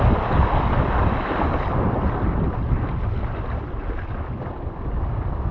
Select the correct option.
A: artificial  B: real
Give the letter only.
B